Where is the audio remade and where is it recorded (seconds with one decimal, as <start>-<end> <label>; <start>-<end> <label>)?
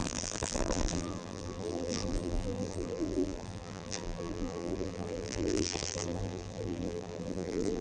0.0-7.8 remade